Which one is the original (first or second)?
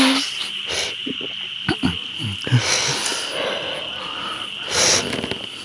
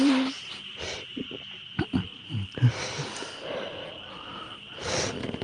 first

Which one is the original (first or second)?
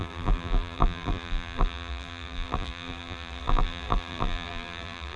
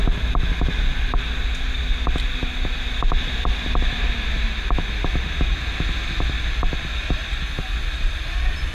second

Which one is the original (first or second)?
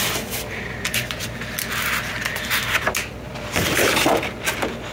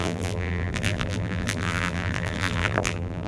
first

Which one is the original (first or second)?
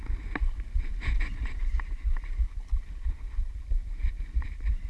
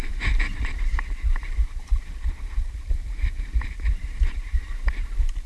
first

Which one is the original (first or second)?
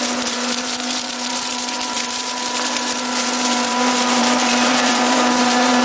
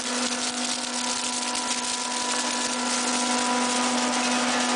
second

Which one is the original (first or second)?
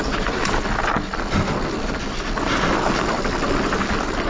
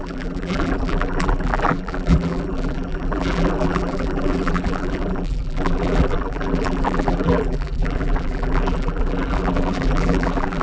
first